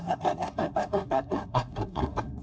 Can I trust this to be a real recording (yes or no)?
no